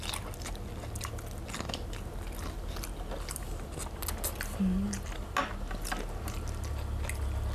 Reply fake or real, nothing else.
real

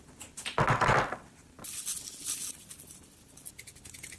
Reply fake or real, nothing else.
real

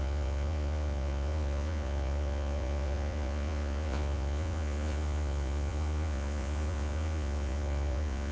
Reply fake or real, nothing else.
fake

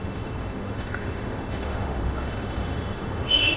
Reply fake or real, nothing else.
fake